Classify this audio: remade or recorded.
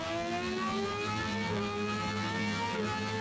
remade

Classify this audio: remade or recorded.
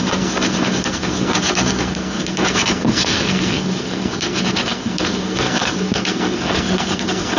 remade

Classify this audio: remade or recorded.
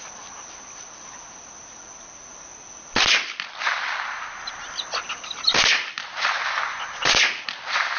recorded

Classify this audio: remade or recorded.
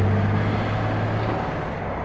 recorded